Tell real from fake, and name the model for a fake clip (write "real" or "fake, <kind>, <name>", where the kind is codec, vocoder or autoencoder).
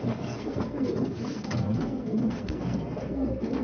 fake, codec, SNAC